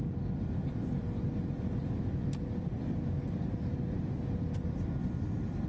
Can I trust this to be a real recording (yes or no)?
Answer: yes